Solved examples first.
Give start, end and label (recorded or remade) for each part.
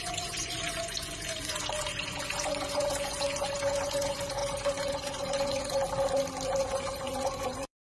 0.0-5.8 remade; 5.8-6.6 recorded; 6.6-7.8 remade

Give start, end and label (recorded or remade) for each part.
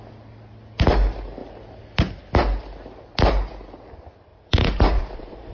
0.0-4.3 recorded; 4.3-5.5 remade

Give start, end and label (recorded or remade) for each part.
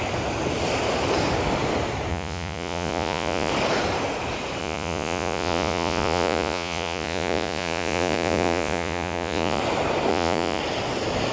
0.0-2.1 recorded; 2.1-3.5 remade; 3.5-4.6 recorded; 4.6-9.6 remade; 9.6-10.1 recorded; 10.1-10.6 remade; 10.6-11.3 recorded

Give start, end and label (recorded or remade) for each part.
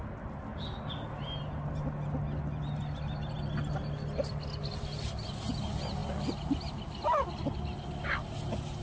0.0-8.8 recorded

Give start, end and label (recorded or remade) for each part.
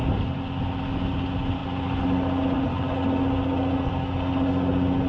0.0-5.1 recorded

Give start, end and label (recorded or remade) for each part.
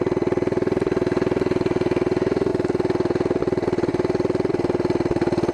0.0-5.5 recorded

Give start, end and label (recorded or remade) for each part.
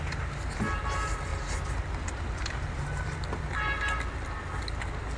0.0-5.2 recorded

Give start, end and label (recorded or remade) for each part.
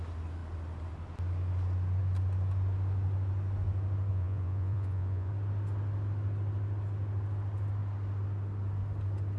0.0-4.1 recorded; 4.1-5.3 remade; 5.3-9.4 recorded